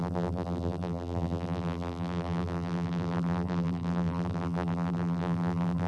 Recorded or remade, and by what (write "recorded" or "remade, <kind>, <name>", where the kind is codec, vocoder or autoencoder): remade, vocoder, BigVGAN v2